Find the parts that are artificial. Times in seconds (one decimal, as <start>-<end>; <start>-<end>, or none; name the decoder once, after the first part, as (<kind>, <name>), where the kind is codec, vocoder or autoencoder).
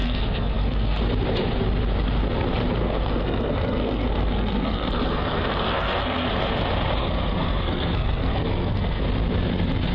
0.0-1.0 (codec, SNAC); 2.8-6.3; 7.0-9.0